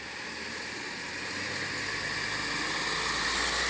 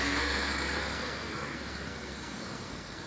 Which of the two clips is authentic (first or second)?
first